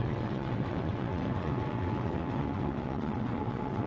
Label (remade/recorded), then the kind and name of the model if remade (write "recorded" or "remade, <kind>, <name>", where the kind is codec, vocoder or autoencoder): remade, vocoder, WaveNeXt